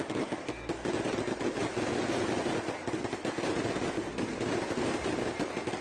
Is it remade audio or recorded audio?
recorded